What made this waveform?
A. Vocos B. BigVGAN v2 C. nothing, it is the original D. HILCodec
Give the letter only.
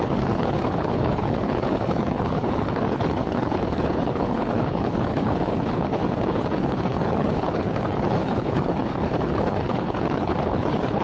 D